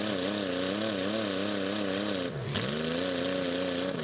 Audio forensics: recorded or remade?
recorded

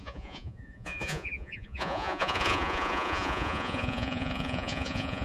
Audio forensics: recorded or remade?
remade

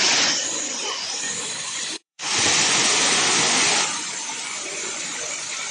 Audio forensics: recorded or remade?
remade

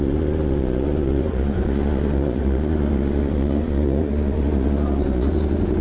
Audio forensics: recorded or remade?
remade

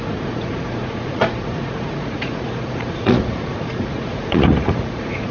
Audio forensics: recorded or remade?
remade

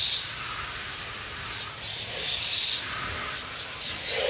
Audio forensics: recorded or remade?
recorded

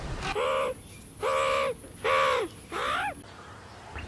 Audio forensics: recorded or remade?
recorded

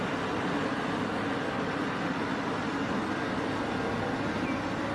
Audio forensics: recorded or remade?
recorded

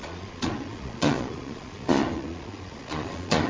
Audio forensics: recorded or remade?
remade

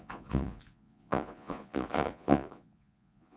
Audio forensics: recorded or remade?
remade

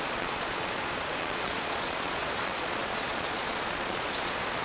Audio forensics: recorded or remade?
remade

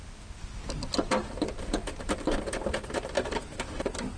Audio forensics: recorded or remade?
recorded